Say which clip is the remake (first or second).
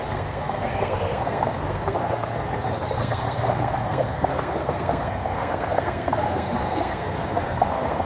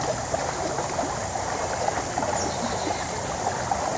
first